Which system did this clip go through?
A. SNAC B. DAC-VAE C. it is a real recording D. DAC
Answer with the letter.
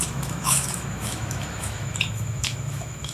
B